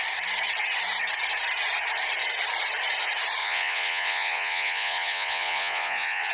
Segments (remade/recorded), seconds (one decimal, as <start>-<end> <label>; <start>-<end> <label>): 0.0-3.4 recorded; 3.4-6.3 remade